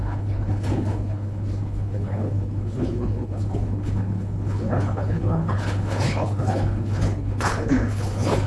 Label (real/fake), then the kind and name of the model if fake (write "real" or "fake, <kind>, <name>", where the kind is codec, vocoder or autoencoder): fake, codec, HILCodec